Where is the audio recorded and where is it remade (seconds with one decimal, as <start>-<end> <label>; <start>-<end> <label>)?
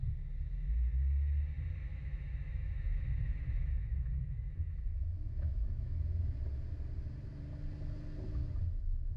0.0-1.9 recorded; 1.9-6.0 remade; 6.0-9.2 recorded